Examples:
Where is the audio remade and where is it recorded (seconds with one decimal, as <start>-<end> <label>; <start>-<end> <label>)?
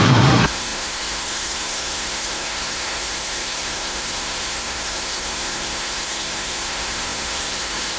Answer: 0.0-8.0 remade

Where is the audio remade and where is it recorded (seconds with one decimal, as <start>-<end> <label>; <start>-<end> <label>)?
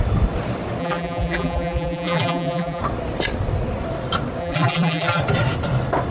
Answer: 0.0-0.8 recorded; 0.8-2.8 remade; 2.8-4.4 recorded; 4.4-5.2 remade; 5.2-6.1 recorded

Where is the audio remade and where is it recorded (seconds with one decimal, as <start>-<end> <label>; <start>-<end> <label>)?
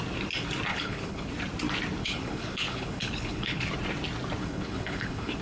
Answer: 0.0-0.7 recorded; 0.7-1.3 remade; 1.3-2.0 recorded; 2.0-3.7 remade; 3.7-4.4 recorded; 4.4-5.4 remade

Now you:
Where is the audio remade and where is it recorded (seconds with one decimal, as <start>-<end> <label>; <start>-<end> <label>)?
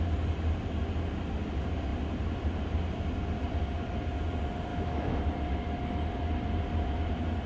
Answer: 0.0-4.7 recorded; 4.7-5.2 remade; 5.2-7.5 recorded